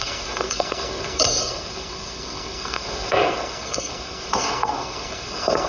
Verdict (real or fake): fake